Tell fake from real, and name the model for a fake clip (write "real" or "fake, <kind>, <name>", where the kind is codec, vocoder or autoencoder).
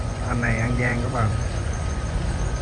fake, vocoder, Vocos